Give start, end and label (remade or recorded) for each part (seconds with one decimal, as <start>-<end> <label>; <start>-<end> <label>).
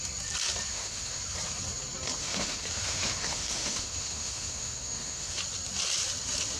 0.0-0.7 recorded; 0.7-1.2 remade; 1.2-2.2 recorded; 2.2-5.4 remade; 5.4-6.6 recorded